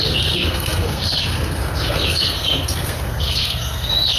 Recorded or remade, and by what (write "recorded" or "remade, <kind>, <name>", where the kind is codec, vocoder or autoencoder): remade, codec, SNAC